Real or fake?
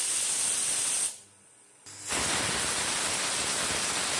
real